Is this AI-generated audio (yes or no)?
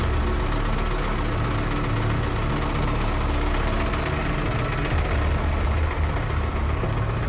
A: no